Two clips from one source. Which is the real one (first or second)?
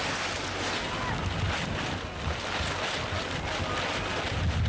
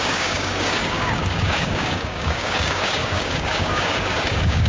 first